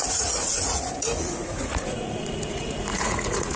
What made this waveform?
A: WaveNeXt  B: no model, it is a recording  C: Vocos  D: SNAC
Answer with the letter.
C